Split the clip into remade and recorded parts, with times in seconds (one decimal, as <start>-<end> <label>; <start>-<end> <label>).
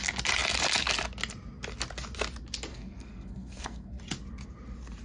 0.0-2.7 recorded; 2.7-4.0 remade; 4.0-5.0 recorded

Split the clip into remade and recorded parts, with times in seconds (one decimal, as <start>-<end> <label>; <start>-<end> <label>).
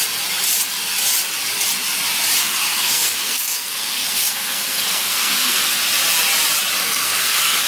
0.0-2.4 recorded; 2.4-5.8 remade; 5.8-6.8 recorded; 6.8-7.7 remade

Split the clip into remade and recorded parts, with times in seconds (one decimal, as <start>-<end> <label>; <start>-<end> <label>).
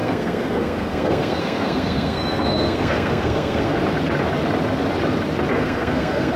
0.0-3.8 remade; 3.8-5.5 recorded; 5.5-6.4 remade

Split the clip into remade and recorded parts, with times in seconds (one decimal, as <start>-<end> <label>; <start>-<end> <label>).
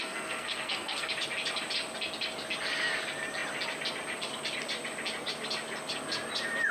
0.0-1.1 remade; 1.1-6.7 recorded